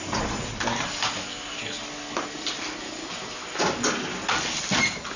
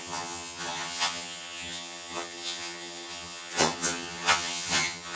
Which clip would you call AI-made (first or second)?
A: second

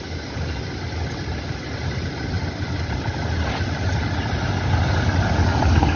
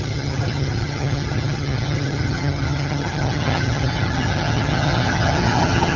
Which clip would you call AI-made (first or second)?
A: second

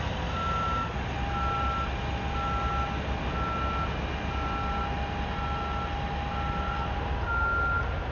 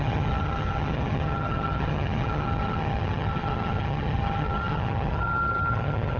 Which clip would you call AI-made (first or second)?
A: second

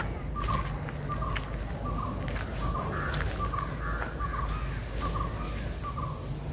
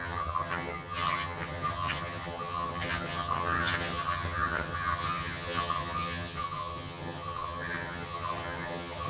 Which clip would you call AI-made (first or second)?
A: second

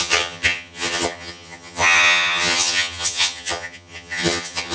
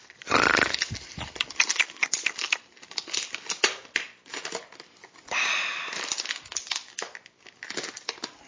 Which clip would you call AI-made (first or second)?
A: first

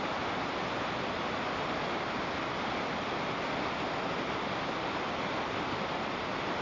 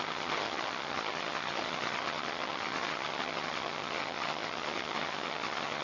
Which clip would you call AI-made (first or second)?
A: second